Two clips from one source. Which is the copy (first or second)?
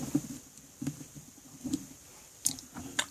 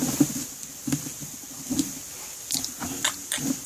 first